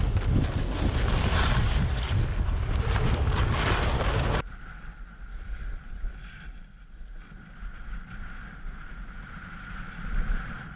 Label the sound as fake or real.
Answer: real